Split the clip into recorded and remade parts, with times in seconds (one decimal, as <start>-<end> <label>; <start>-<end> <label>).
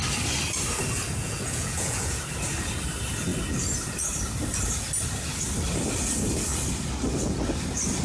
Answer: 0.0-1.2 recorded; 1.2-2.2 remade; 2.2-8.0 recorded